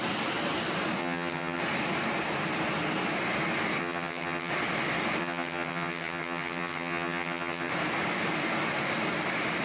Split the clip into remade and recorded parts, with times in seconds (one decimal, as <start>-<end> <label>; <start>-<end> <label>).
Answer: 0.0-1.0 recorded; 1.0-1.6 remade; 1.6-3.8 recorded; 3.8-4.5 remade; 4.5-5.2 recorded; 5.2-7.7 remade; 7.7-9.6 recorded